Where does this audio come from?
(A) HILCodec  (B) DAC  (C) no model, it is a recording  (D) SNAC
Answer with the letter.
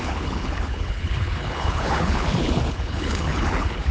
A